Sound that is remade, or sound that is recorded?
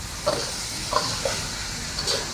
recorded